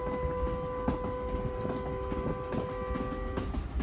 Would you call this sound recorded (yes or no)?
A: yes